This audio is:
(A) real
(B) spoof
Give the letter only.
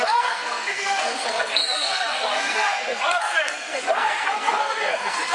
B